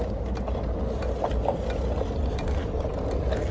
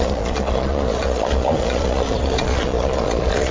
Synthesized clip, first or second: second